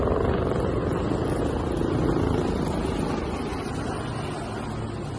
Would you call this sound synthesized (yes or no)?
no